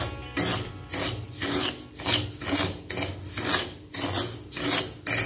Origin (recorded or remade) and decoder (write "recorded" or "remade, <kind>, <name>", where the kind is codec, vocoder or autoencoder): recorded